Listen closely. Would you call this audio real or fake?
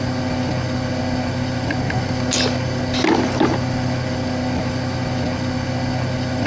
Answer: real